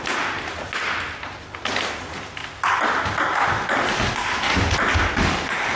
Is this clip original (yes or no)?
yes